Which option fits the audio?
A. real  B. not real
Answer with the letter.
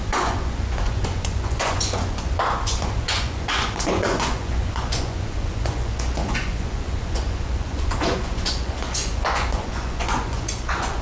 B